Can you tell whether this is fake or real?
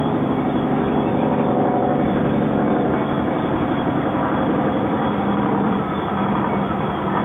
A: fake